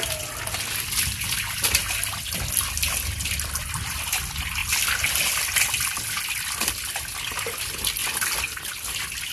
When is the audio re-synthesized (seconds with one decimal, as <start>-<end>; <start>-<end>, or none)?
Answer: none